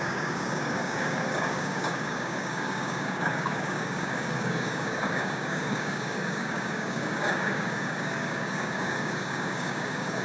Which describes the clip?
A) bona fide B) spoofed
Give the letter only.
B